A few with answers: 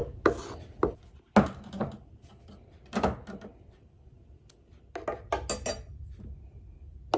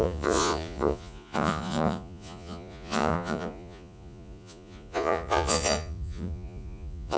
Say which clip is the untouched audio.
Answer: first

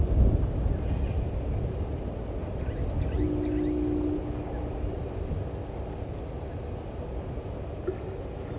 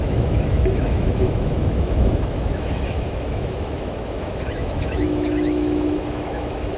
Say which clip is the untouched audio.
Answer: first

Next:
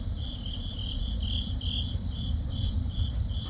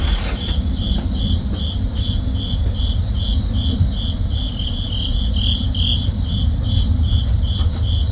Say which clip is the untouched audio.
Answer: second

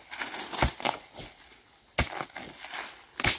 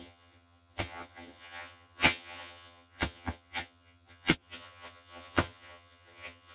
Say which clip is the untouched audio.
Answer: first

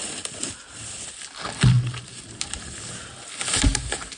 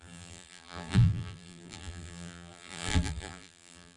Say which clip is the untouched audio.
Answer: first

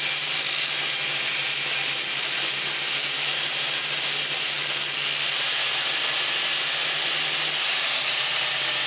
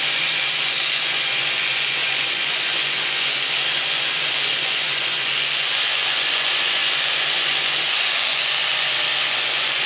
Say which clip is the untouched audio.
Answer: first